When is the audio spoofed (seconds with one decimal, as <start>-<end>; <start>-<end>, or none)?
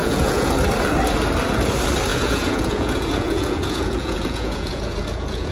0.0-0.5; 2.1-5.5